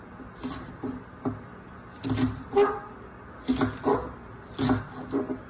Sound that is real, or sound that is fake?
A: real